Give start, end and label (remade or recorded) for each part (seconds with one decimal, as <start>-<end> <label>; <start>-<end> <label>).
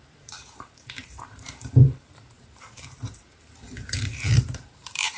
0.0-5.2 remade